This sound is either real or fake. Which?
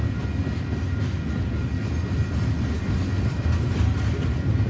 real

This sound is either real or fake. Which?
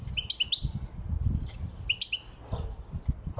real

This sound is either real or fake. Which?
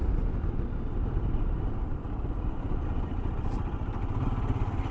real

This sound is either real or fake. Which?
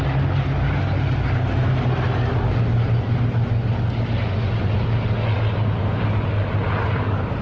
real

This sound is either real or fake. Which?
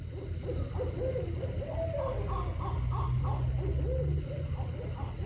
real